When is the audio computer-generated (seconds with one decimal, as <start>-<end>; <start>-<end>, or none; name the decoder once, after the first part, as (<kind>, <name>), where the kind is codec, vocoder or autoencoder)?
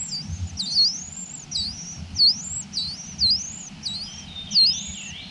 none